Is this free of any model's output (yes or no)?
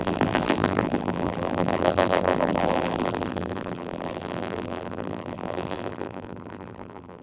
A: no